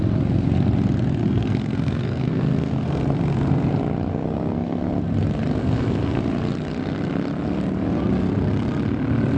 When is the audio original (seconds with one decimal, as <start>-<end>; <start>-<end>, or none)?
0.0-1.2; 3.0-4.1; 5.0-5.6; 6.2-9.4

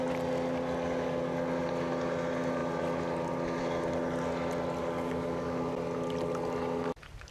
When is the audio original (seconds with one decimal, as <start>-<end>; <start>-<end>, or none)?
0.0-4.8; 5.7-7.3